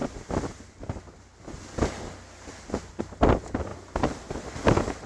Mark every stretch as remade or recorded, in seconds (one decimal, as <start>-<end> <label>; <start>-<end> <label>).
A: 0.0-5.1 recorded